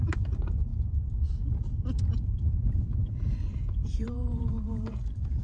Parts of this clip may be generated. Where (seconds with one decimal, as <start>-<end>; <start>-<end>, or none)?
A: 0.0-0.7; 2.2-5.4